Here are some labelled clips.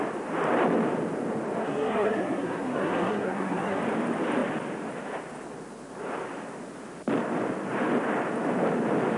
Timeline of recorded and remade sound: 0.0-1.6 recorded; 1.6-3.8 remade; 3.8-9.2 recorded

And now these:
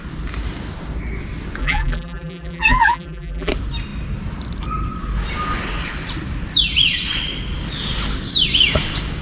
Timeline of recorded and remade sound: 0.0-1.6 recorded; 1.6-3.5 remade; 3.5-9.2 recorded